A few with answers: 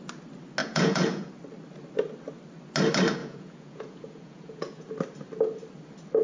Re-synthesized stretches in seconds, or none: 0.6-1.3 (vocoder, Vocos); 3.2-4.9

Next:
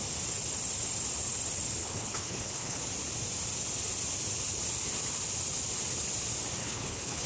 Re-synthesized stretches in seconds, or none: 1.8-2.8 (codec, HILCodec); 6.6-7.3

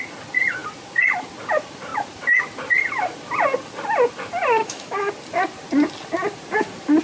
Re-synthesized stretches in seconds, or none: 4.6-5.1 (autoencoder, DAC-VAE)

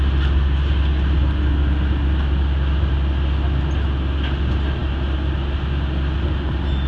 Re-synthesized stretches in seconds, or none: none

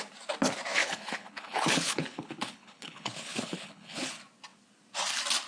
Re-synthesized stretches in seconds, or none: 0.8-4.1 (codec, HILCodec)

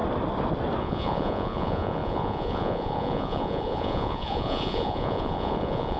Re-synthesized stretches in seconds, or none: 0.8-6.0 (vocoder, Vocos)